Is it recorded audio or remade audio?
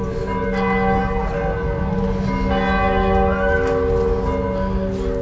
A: recorded